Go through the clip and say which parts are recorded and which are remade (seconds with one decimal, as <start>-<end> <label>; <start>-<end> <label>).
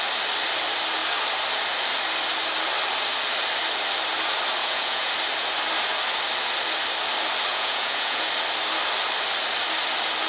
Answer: 0.0-4.6 recorded; 4.6-5.1 remade; 5.1-7.5 recorded; 7.5-8.3 remade; 8.3-10.3 recorded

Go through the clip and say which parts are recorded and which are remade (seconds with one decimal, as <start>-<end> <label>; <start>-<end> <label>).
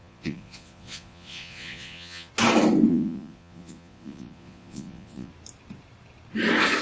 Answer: 0.0-2.3 remade; 2.3-2.9 recorded; 2.9-5.3 remade; 5.3-6.8 recorded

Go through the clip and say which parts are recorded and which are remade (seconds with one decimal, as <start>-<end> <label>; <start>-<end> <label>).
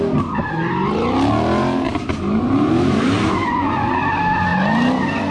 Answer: 0.0-3.4 recorded; 3.4-4.0 remade; 4.0-5.3 recorded